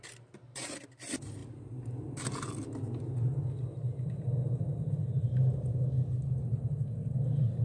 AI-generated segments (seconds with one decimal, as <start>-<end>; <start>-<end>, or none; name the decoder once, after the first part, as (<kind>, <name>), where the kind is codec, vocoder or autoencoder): none